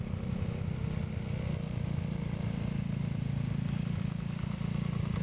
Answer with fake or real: real